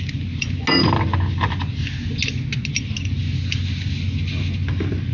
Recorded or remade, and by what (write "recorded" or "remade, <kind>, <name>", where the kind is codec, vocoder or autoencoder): recorded